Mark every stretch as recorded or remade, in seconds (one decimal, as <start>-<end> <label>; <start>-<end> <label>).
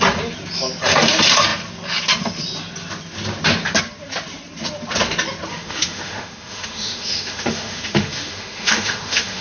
0.0-5.5 recorded; 5.5-9.4 remade